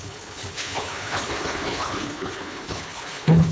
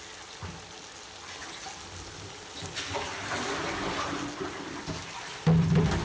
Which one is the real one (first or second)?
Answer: second